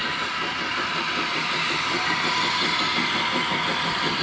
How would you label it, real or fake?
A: real